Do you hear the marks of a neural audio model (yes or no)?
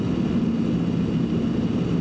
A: no